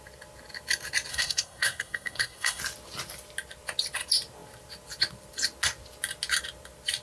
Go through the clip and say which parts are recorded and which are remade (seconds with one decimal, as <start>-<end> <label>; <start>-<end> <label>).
0.0-1.1 recorded; 1.1-2.6 remade; 2.6-7.0 recorded